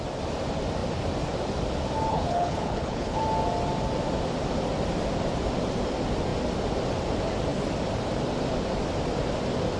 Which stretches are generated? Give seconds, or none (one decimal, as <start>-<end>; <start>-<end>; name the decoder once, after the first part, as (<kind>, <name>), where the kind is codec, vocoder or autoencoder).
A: 2.1-3.2 (codec, HILCodec)